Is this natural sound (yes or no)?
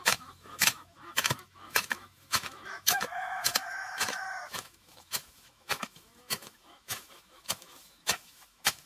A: no